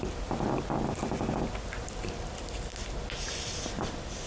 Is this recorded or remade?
recorded